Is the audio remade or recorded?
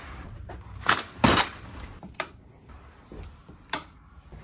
remade